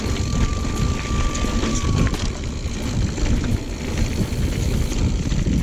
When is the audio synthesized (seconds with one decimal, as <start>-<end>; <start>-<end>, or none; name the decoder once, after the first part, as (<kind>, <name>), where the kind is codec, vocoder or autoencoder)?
none